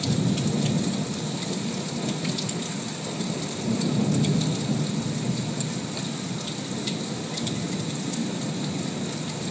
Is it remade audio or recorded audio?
recorded